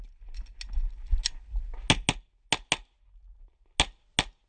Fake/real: real